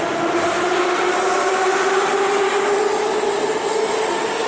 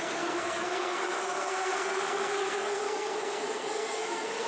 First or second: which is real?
first